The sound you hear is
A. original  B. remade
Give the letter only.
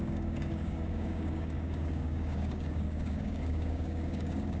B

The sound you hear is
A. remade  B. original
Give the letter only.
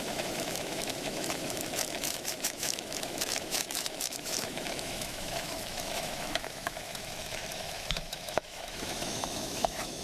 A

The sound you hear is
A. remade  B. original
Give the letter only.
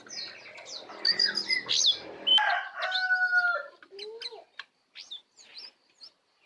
B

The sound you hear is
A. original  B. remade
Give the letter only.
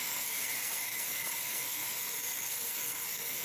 B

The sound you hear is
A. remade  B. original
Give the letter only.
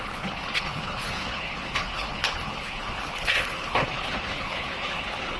A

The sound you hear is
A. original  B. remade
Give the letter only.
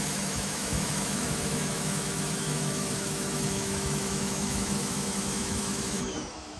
B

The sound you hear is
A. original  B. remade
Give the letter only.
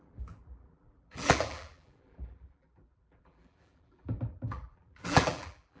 B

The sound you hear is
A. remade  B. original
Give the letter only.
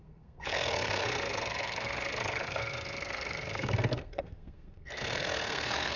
A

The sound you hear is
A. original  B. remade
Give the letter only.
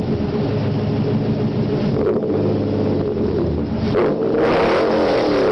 A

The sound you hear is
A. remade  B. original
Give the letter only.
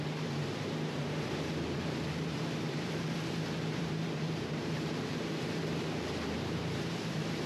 A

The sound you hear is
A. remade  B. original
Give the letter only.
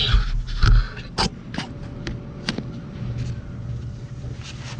B